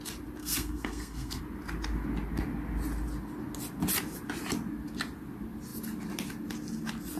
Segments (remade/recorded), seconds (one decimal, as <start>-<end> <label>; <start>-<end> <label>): 0.0-0.4 recorded; 0.4-1.4 remade; 1.4-7.2 recorded